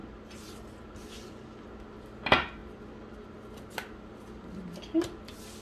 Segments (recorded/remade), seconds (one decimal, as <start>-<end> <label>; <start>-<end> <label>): 0.0-5.6 recorded